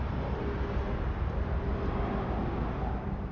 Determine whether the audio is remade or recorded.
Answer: recorded